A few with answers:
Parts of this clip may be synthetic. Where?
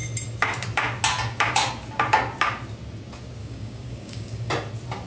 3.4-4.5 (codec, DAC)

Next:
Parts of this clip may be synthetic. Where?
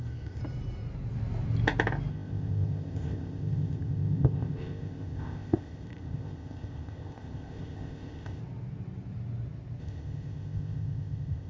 0.0-0.4 (codec, ZipCodec); 2.1-8.4; 9.8-11.5